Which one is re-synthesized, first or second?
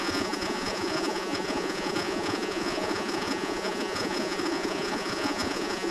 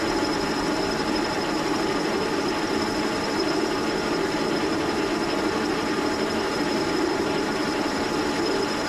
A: first